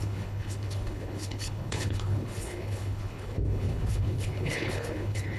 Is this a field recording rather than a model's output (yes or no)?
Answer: no